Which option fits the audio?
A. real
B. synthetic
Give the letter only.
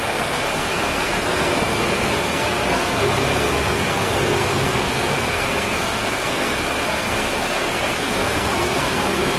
B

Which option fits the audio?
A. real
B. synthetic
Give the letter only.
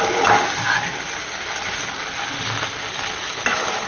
A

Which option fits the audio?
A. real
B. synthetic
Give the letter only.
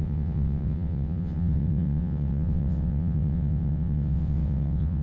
B